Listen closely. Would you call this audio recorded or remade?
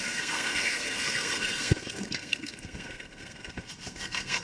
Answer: remade